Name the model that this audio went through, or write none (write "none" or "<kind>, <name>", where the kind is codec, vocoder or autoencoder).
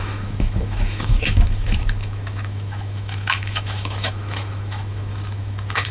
autoencoder, DAC-VAE